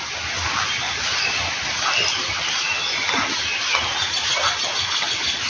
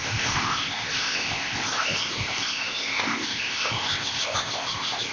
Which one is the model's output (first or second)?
second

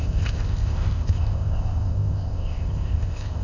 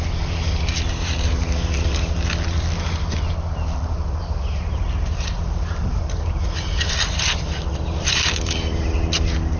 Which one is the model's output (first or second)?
first